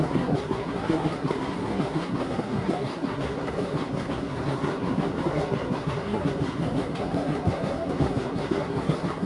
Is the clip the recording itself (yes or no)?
no